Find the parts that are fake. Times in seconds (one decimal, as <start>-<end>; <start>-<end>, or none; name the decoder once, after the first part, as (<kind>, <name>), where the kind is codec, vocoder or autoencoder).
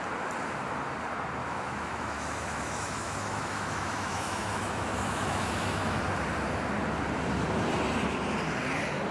1.4-6.0 (autoencoder, DAC-VAE)